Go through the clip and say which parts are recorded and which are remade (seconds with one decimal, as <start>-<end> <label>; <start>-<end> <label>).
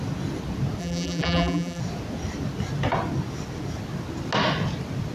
0.0-0.8 recorded; 0.8-1.8 remade; 1.8-5.1 recorded